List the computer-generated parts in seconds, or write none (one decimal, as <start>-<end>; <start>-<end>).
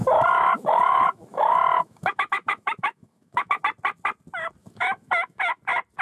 0.0-3.6; 4.6-5.6